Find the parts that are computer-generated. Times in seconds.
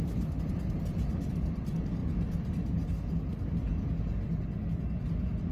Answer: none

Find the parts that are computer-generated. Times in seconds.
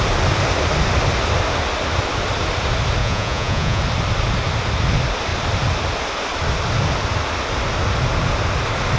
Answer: 3.0-3.8 (vocoder, Vocos)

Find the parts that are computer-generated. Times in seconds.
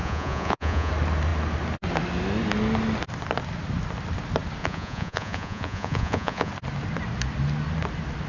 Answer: 0.0-0.9 (vocoder, Vocos); 4.6-6.5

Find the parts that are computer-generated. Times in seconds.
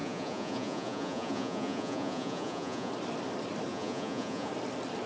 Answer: 0.0-2.9 (vocoder, Vocos); 3.7-4.5